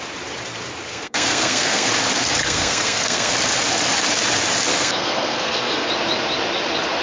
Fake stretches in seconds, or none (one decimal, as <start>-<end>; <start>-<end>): 0.9-1.9; 2.4-3.3; 4.7-5.9